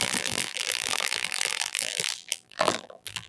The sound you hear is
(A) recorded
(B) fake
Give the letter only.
B